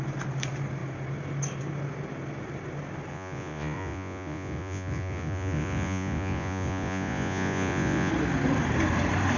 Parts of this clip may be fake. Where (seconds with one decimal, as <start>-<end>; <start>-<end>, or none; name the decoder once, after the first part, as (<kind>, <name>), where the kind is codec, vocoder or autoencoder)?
3.1-8.1 (vocoder, Vocos)